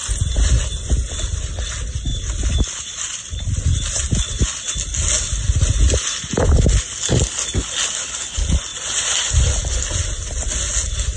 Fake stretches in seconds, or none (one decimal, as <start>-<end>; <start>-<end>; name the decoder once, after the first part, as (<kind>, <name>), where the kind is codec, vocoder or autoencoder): 2.1-3.6 (vocoder, BigVGAN v2); 8.7-9.4